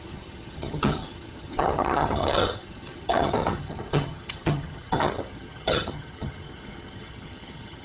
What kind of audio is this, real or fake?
fake